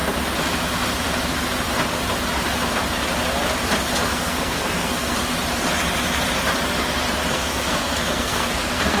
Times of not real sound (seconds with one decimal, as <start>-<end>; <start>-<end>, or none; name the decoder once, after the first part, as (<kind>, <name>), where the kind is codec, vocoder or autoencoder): 4.0-5.2 (codec, SNAC); 7.3-9.0

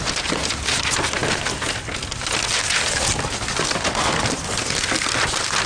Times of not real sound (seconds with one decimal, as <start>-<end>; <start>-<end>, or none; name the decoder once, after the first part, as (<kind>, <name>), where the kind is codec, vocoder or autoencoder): none

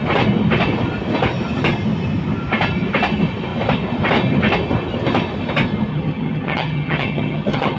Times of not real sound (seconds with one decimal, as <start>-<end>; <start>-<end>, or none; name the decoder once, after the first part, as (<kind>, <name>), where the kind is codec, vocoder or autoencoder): 5.9-7.8 (vocoder, HiFi-GAN)

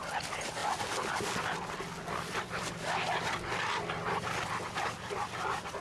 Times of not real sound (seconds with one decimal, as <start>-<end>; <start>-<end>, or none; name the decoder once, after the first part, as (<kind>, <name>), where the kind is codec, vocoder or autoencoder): none

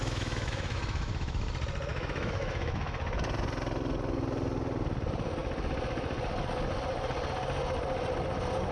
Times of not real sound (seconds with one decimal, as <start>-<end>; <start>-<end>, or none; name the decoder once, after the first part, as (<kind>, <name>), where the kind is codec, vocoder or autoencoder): 0.0-1.5 (autoencoder, DAC-VAE); 1.9-3.0